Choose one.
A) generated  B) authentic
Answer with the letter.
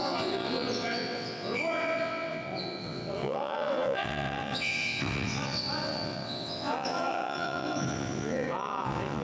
A